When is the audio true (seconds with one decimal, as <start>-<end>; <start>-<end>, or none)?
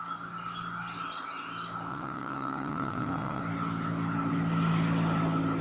0.0-1.9; 3.4-5.6